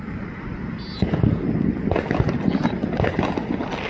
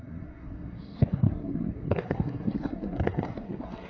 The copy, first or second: second